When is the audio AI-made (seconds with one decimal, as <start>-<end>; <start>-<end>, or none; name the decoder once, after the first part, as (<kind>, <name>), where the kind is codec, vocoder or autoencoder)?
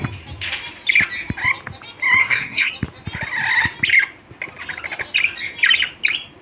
2.2-2.7 (codec, SNAC)